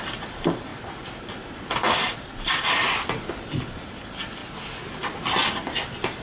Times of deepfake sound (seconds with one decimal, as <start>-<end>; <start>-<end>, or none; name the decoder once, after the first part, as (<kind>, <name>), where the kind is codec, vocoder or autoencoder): none